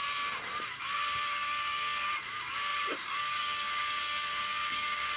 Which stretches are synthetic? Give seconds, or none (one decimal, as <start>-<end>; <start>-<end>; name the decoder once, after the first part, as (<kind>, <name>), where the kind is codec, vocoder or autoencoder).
0.6-5.2 (codec, DAC)